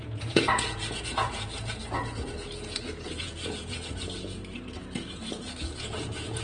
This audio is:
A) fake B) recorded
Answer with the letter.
A